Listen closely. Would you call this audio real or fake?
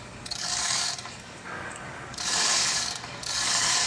fake